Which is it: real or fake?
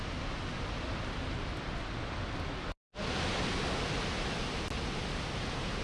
real